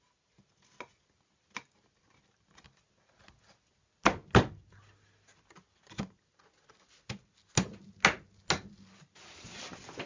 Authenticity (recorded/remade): recorded